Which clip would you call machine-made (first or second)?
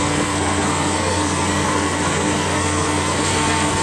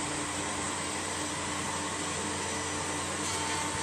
first